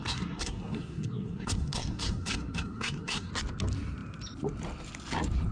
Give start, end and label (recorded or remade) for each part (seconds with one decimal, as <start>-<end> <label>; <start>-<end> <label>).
0.0-3.3 remade; 3.3-5.5 recorded

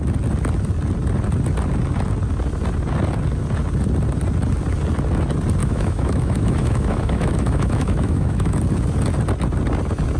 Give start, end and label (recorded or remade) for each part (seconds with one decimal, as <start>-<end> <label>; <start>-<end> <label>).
0.0-5.6 recorded; 5.6-8.6 remade; 8.6-10.2 recorded

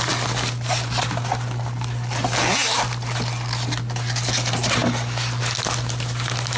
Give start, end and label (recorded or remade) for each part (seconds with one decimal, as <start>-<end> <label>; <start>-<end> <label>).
0.0-6.6 recorded

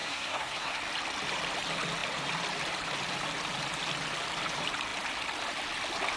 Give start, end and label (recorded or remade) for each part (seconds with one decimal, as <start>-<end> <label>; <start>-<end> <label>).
0.0-0.8 remade; 0.8-6.2 recorded